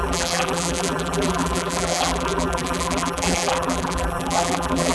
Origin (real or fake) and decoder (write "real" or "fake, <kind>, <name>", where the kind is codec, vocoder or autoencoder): fake, vocoder, BigVGAN v2